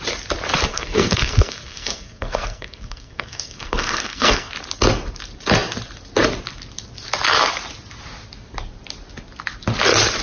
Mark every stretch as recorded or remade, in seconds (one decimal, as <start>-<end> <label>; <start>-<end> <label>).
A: 0.0-0.7 recorded; 0.7-4.5 remade; 4.5-10.2 recorded